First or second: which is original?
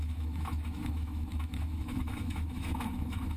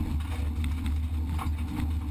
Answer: second